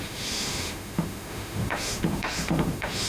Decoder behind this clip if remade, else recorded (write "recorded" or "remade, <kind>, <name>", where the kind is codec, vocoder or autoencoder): remade, autoencoder, DAC-VAE